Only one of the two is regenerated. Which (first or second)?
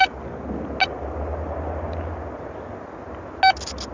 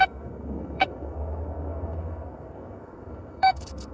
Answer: second